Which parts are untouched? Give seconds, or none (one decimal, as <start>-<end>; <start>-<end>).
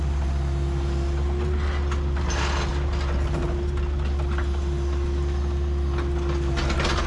0.0-7.1